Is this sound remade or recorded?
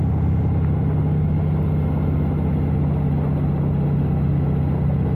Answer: recorded